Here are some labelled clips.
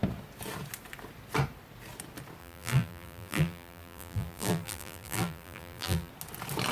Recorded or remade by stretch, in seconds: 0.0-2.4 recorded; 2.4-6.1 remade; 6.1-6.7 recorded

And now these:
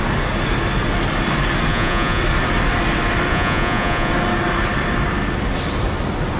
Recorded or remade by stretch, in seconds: 0.0-1.7 recorded; 1.7-2.2 remade; 2.2-3.3 recorded; 3.3-4.1 remade; 4.1-6.4 recorded

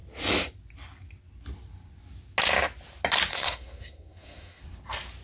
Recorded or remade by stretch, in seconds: 0.0-3.3 recorded; 3.3-4.6 remade; 4.6-5.2 recorded

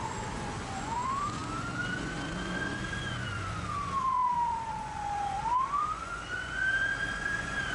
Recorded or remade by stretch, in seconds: 0.0-7.7 remade

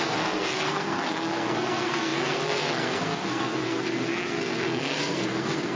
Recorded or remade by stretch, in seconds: 0.0-5.8 remade

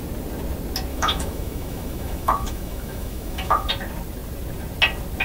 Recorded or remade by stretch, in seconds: 0.0-0.9 recorded; 0.9-3.7 remade; 3.7-5.2 recorded